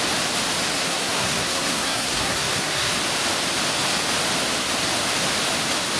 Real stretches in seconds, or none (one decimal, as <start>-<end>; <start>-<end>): 0.0-0.7; 2.9-6.0